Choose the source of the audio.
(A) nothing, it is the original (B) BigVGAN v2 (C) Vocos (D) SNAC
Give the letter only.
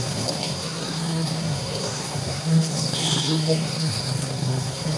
D